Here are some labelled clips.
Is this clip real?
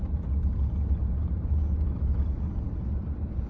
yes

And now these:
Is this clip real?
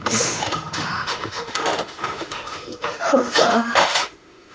no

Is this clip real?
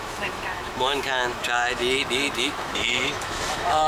no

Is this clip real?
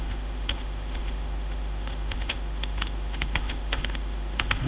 no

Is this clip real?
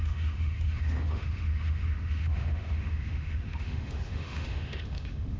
no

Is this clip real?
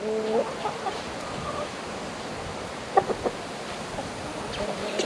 yes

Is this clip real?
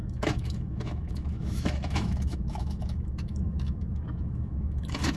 no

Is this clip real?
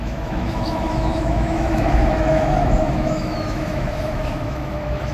no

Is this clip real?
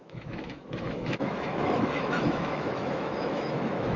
no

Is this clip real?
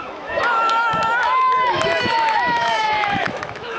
no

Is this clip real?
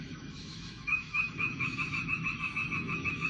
no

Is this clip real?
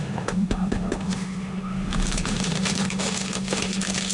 no